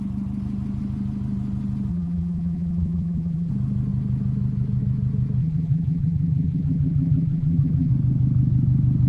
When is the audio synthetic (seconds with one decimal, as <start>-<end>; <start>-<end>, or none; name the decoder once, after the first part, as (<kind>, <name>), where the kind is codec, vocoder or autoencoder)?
1.9-3.5 (vocoder, BigVGAN v2); 5.4-7.9